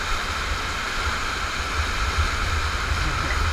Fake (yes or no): no